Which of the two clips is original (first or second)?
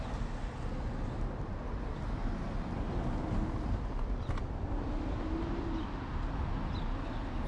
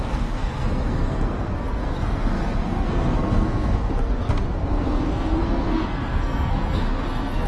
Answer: first